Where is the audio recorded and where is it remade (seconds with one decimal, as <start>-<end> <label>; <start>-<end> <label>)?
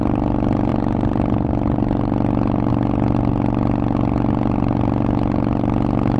0.0-6.2 recorded